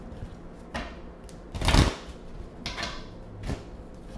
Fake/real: real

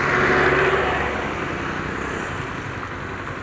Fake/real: real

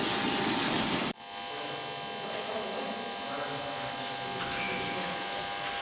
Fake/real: real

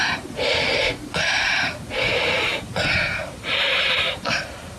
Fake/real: real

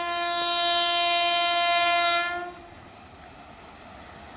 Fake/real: real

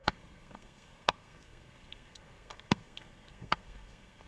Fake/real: fake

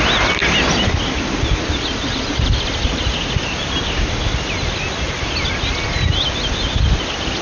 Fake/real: real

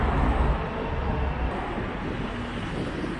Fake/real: real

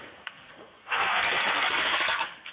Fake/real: fake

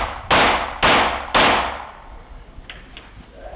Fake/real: real